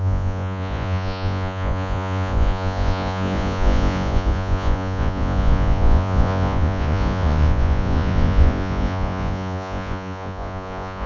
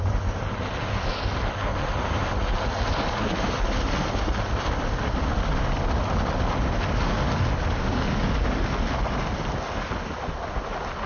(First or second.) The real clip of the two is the second